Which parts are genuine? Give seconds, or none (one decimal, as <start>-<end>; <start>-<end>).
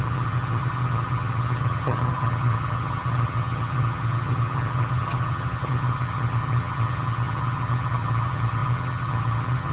none